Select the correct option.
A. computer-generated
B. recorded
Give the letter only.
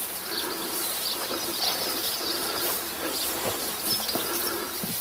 B